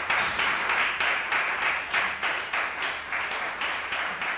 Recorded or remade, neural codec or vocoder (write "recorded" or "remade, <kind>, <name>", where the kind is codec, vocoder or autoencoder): remade, vocoder, BigVGAN v2